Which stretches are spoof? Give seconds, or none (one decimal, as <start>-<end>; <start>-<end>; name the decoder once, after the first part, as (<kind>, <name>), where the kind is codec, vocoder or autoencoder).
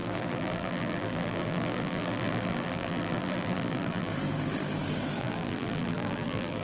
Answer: 0.0-4.1 (vocoder, BigVGAN v2); 5.2-6.6